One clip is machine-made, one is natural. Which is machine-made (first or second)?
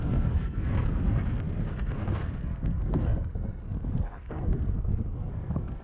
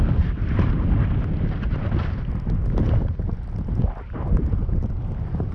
first